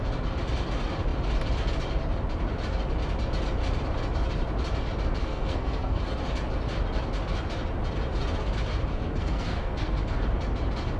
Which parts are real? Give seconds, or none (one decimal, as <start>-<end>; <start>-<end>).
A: 0.0-5.2; 6.0-8.9; 10.2-11.0